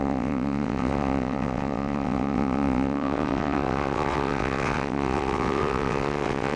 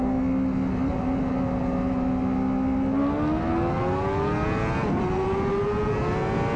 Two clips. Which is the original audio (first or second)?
second